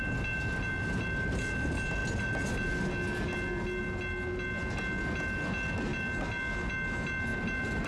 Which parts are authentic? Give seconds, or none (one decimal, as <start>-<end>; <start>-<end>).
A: 0.0-7.3